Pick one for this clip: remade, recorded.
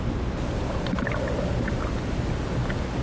recorded